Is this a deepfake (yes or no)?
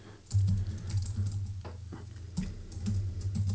no